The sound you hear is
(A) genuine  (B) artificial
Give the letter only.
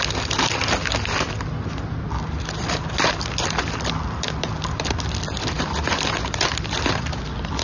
A